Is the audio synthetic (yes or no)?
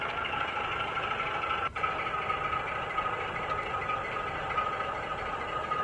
no